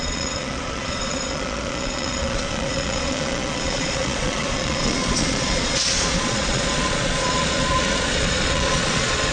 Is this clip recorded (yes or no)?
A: no